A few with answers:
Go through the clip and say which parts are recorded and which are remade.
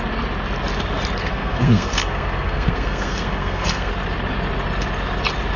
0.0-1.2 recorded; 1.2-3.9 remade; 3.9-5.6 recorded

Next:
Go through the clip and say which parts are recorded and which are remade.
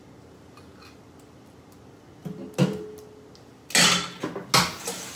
0.0-5.2 recorded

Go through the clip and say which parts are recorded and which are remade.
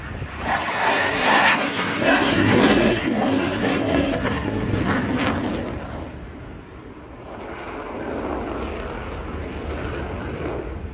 0.0-0.7 recorded; 0.7-4.8 remade; 4.8-10.9 recorded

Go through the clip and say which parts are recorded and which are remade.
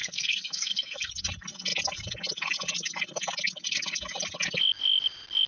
0.0-1.1 remade; 1.1-5.5 recorded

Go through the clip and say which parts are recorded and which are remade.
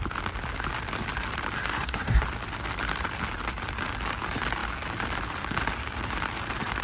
0.0-1.7 recorded; 1.7-2.2 remade; 2.2-6.8 recorded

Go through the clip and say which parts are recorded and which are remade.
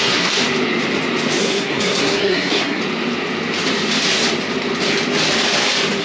0.0-0.4 remade; 0.4-1.4 recorded; 1.4-2.8 remade; 2.8-6.0 recorded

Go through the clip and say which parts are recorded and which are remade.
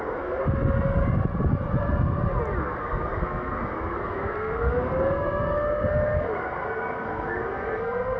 0.0-0.4 remade; 0.4-2.6 recorded; 2.6-8.2 remade